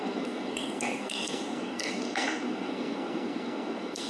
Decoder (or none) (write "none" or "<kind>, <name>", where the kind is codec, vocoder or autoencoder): codec, SNAC